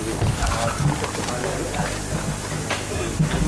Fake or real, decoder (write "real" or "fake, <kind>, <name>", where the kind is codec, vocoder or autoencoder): real